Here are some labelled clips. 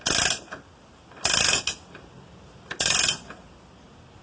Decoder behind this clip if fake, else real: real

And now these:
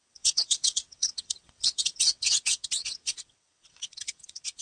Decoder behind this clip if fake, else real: fake, vocoder, WaveNeXt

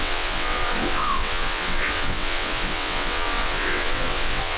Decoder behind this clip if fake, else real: fake, vocoder, WaveNeXt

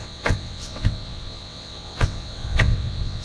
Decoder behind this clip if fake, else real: fake, vocoder, WaveNeXt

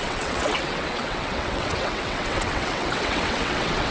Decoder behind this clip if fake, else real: fake, vocoder, WaveNeXt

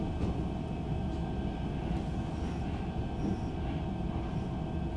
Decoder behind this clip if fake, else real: real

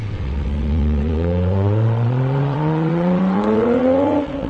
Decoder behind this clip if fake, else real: fake, vocoder, WaveNeXt